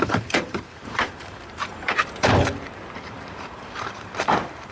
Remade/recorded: remade